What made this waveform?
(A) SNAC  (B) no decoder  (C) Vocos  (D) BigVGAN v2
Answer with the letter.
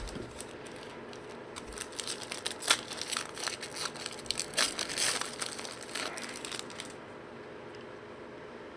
B